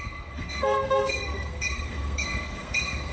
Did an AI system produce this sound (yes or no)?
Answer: yes